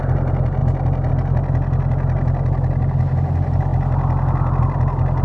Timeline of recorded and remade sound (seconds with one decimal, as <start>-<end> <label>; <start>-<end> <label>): 0.0-5.2 recorded